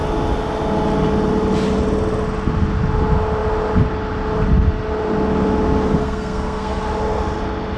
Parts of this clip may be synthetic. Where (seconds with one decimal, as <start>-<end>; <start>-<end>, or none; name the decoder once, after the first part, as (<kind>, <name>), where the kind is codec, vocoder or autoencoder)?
6.0-6.8 (codec, SNAC)